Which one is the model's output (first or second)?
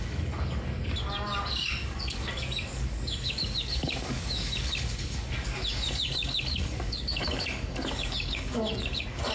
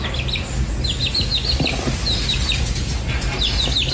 first